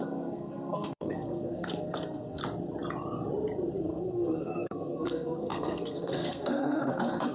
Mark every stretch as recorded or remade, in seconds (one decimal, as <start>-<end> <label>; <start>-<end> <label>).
0.0-2.4 remade; 2.4-3.8 recorded; 3.8-7.3 remade